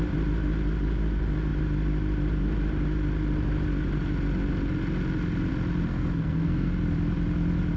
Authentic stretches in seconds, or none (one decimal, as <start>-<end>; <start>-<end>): 0.0-5.9; 6.7-7.8